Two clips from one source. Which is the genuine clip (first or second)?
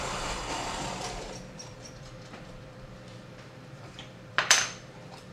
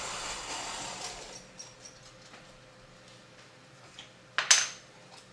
second